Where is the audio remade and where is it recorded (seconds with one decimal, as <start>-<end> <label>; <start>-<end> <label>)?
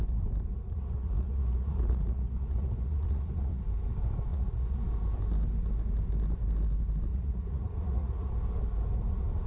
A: 0.0-0.5 recorded; 0.5-3.6 remade; 3.6-4.3 recorded; 4.3-4.8 remade; 4.8-7.1 recorded; 7.1-8.3 remade; 8.3-9.5 recorded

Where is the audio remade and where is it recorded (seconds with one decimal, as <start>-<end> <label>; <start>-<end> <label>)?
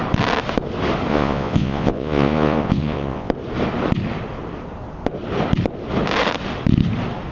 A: 0.0-1.1 recorded; 1.1-3.3 remade; 3.3-7.3 recorded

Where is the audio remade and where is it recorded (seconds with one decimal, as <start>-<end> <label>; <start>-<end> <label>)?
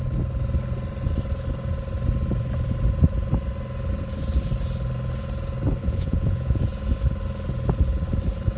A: 0.0-5.8 recorded; 5.8-6.6 remade; 6.6-8.6 recorded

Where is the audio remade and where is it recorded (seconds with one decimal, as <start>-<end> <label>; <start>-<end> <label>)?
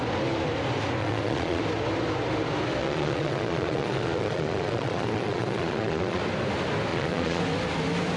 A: 0.0-1.0 recorded; 1.0-1.6 remade; 1.6-2.8 recorded; 2.8-6.2 remade; 6.2-6.9 recorded; 6.9-7.4 remade; 7.4-8.2 recorded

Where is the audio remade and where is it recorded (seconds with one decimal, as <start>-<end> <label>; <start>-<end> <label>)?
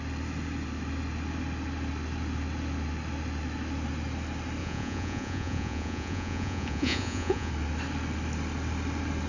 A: 0.0-4.6 recorded; 4.6-7.5 remade; 7.5-9.3 recorded